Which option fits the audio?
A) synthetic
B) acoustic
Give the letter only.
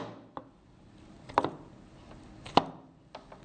B